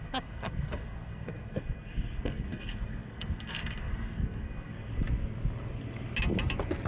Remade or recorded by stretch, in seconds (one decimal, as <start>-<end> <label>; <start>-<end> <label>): 0.0-4.9 remade; 4.9-6.9 recorded